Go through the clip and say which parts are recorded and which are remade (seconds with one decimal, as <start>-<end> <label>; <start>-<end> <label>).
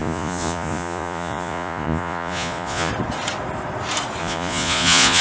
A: 0.0-2.9 remade; 2.9-4.2 recorded; 4.2-5.2 remade